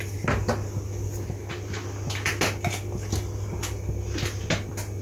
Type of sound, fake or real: real